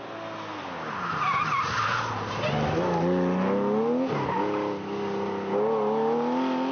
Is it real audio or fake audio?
real